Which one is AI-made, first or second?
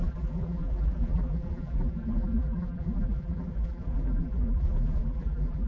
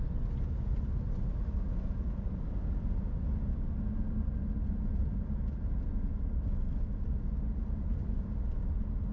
first